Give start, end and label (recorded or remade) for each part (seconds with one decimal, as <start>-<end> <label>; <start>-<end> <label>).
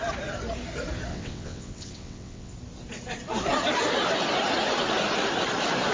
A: 0.0-1.1 recorded; 1.1-2.5 remade; 2.5-5.9 recorded